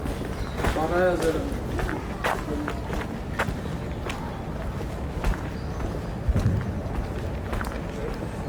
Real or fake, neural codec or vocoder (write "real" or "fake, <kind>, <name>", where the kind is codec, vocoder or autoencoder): real